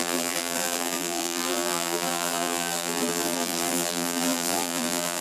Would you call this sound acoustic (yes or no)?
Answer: no